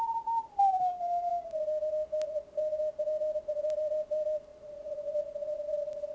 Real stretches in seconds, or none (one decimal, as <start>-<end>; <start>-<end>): 0.0-4.5; 5.1-6.1